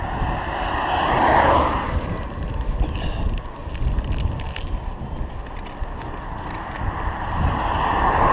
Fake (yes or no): no